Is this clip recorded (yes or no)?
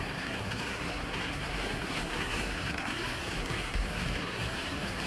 no